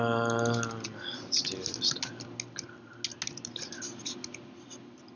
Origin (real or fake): real